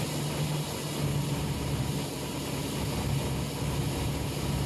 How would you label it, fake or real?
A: real